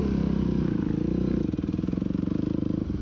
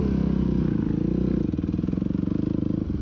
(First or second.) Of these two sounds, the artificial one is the first